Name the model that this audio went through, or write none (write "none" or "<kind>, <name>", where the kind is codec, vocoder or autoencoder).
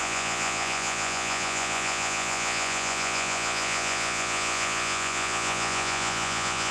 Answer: vocoder, Vocos